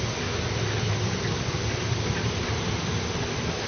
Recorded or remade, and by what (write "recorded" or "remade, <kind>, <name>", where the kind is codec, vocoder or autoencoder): recorded